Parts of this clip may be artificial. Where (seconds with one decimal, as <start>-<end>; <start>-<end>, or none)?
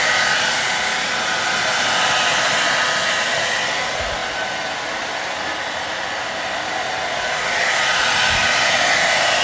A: none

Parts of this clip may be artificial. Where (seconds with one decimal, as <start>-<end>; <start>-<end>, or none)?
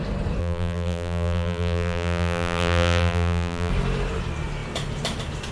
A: 0.4-3.7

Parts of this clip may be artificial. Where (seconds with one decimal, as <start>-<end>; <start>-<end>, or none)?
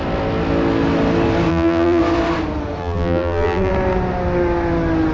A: 1.5-2.0; 2.8-3.7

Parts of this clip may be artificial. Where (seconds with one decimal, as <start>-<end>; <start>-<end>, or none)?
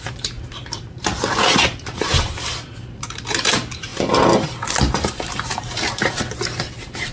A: 0.0-3.9; 4.9-7.1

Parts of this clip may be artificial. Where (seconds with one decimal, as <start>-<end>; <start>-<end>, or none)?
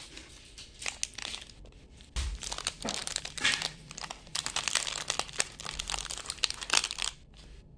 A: 3.0-4.3; 6.8-7.8